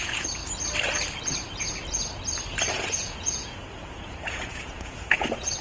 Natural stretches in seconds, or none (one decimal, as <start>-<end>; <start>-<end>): 0.4-2.7